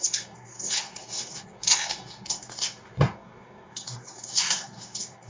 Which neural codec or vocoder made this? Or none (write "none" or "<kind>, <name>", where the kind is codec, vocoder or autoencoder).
codec, SNAC